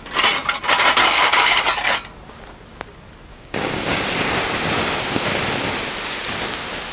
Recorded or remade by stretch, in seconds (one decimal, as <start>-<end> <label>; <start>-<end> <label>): 0.0-1.0 recorded; 1.0-1.6 remade; 1.6-3.3 recorded; 3.3-4.0 remade; 4.0-6.9 recorded